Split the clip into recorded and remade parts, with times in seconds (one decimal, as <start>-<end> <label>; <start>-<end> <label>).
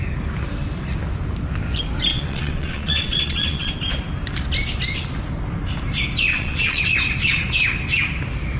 0.0-2.1 recorded; 2.1-3.7 remade; 3.7-6.3 recorded; 6.3-6.8 remade; 6.8-8.6 recorded